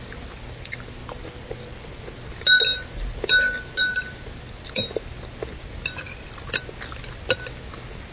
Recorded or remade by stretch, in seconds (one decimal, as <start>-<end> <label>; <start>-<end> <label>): 0.0-8.1 recorded